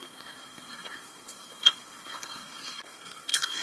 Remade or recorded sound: remade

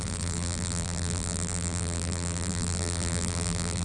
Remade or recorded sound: remade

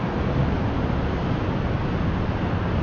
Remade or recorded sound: recorded